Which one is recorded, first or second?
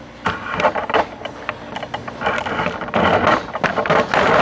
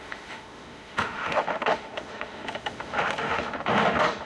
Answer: first